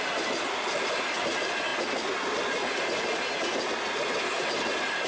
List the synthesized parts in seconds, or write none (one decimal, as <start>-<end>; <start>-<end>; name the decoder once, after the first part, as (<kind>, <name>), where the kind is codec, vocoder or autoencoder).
none